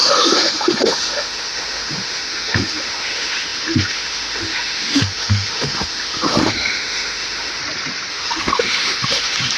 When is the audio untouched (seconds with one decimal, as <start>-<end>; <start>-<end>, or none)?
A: 7.6-8.1

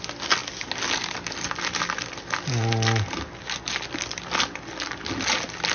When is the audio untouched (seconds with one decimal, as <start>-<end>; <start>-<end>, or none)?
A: 0.0-5.7

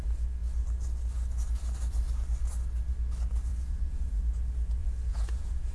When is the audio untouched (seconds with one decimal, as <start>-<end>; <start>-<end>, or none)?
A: 0.0-3.5; 4.2-4.8

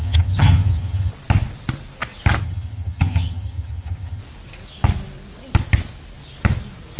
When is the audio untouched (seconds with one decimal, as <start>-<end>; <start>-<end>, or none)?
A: 1.1-2.4; 4.2-7.0

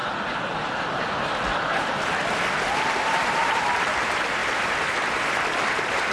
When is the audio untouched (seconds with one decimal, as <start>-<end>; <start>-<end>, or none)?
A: none

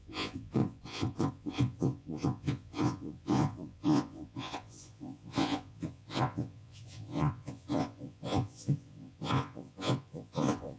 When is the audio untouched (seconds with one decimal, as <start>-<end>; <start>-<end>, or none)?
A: none

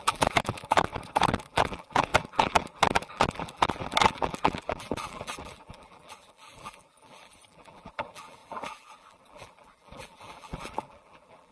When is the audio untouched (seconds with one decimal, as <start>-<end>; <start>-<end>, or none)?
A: 0.9-1.4